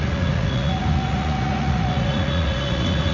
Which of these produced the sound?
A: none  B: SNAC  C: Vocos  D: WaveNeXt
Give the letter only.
C